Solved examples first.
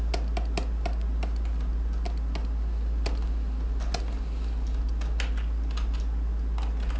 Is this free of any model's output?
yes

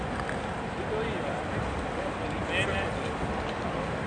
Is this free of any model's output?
yes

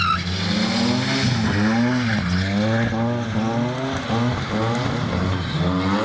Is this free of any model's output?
yes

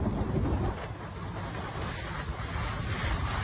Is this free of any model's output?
yes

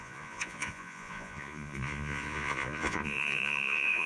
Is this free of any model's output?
no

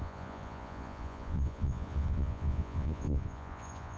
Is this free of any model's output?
no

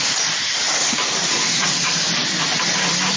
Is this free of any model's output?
yes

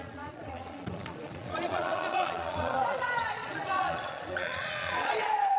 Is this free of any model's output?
no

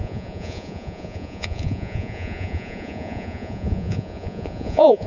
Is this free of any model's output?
no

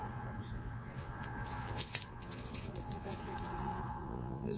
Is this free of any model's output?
no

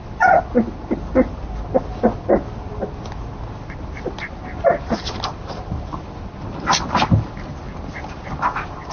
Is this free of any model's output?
yes